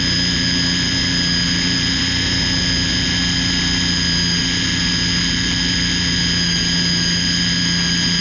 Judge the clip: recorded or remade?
recorded